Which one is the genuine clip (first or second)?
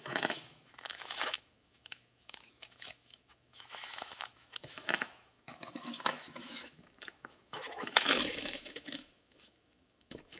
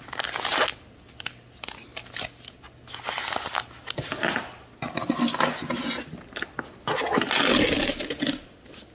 second